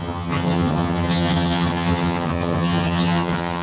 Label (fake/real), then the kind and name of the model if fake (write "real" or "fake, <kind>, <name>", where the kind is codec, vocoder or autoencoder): fake, vocoder, HiFi-GAN